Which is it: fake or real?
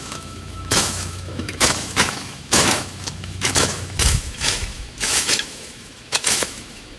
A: fake